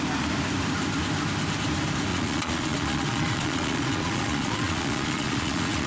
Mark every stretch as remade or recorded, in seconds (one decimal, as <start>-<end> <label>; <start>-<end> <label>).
0.0-2.1 recorded; 2.1-5.9 remade